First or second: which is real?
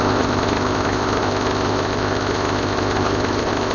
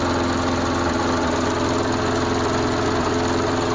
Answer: second